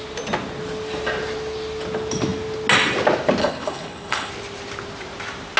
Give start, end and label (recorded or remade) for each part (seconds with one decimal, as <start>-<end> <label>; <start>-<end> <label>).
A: 0.0-3.4 recorded; 3.4-4.3 remade; 4.3-5.6 recorded